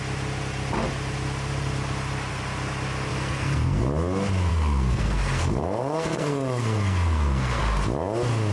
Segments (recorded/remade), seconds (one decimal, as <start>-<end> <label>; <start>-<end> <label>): 0.0-3.1 recorded; 3.1-3.8 remade; 3.8-4.5 recorded; 4.5-7.6 remade; 7.6-8.5 recorded